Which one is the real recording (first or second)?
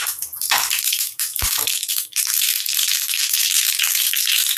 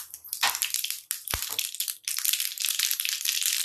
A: second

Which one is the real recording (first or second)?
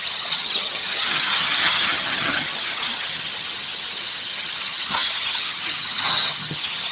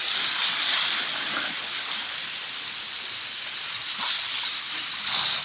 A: second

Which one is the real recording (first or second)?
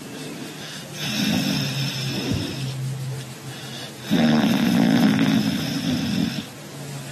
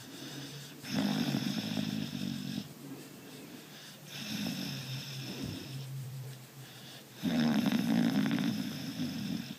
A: first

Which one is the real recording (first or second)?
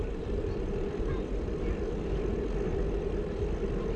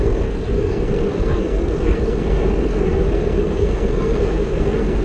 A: first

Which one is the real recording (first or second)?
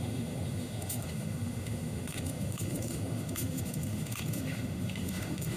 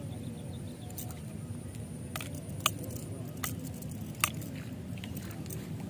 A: second